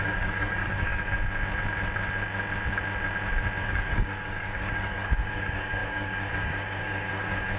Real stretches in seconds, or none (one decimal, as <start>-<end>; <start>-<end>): 0.9-3.6

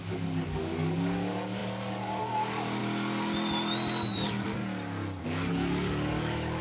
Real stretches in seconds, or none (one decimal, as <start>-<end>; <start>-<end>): 2.8-4.1; 4.6-5.2